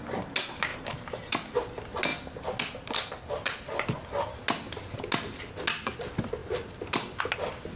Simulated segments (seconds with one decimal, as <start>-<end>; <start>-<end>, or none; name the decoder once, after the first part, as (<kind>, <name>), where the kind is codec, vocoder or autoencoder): 0.7-1.6 (vocoder, BigVGAN v2)